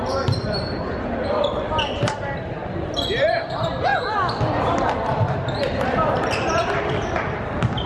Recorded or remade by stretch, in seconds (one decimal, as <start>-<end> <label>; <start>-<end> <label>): 0.0-3.9 remade; 3.9-4.5 recorded; 4.5-7.9 remade